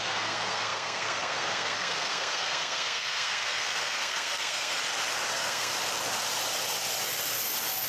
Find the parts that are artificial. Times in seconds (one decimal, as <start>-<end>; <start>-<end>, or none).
0.0-4.8; 5.3-5.7